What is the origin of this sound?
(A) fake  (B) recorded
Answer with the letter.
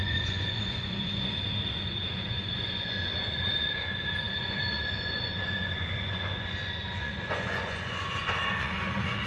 A